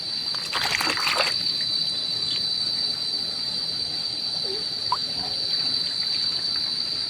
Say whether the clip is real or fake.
real